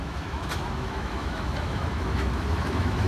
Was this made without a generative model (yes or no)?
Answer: no